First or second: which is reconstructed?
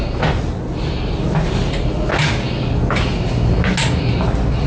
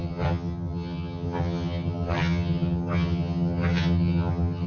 second